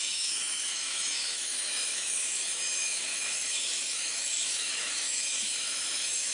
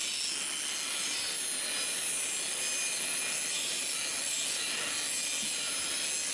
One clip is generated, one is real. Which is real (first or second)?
second